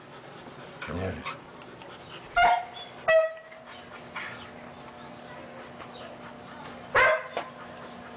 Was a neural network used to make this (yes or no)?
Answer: no